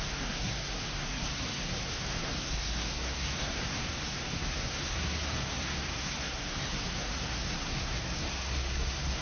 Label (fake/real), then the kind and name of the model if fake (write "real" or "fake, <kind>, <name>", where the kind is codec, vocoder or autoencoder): fake, codec, SNAC